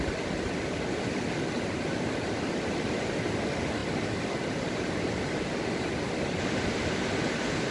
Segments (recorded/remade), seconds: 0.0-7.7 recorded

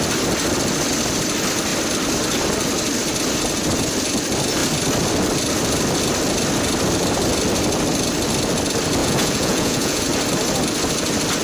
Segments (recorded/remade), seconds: 0.0-9.0 recorded; 9.0-10.0 remade; 10.0-11.4 recorded

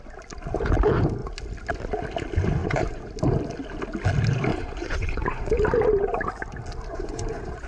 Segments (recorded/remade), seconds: 0.0-2.6 recorded; 2.6-3.1 remade; 3.1-4.5 recorded; 4.5-5.5 remade; 5.5-6.9 recorded; 6.9-7.7 remade

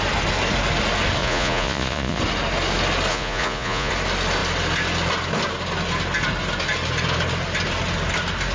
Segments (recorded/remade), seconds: 0.0-1.2 recorded; 1.2-2.2 remade; 2.2-3.1 recorded; 3.1-3.9 remade; 3.9-8.5 recorded

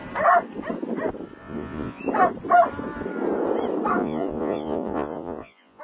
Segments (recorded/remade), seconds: 0.0-1.4 recorded; 1.4-2.0 remade; 2.0-4.0 recorded; 4.0-5.8 remade

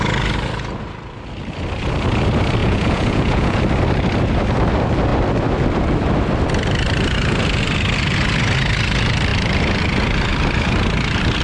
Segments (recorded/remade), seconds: 0.0-2.6 recorded; 2.6-3.6 remade; 3.6-11.4 recorded